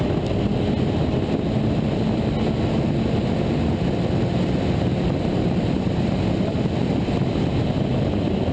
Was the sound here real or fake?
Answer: real